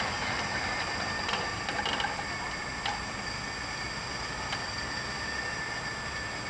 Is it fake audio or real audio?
real